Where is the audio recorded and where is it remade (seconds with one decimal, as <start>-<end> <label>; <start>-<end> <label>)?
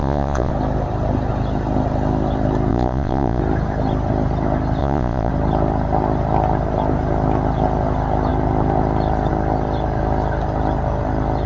0.0-0.5 remade; 0.5-2.7 recorded; 2.7-3.4 remade; 3.4-4.8 recorded; 4.8-5.3 remade; 5.3-11.5 recorded